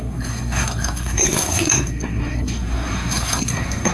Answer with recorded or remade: remade